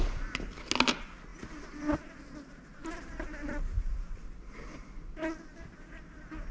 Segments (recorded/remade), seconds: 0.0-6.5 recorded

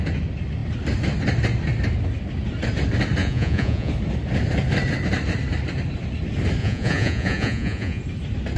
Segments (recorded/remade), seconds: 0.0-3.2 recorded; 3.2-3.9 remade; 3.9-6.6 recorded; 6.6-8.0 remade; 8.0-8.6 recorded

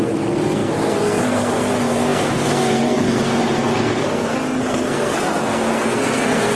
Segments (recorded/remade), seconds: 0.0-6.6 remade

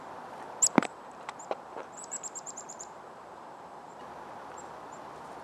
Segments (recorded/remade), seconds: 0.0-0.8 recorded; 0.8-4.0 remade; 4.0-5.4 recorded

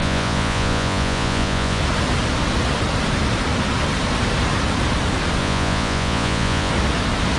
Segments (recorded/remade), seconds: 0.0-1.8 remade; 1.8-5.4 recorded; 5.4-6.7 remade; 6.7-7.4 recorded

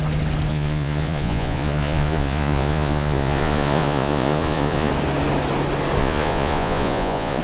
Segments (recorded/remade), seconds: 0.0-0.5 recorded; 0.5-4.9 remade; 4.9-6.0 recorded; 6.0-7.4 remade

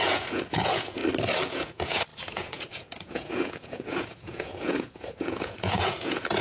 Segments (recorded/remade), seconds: 0.0-1.0 remade; 1.0-1.5 recorded; 1.5-6.4 remade